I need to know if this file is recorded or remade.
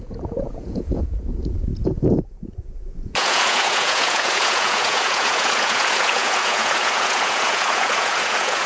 remade